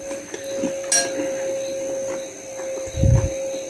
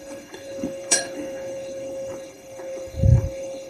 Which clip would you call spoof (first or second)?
second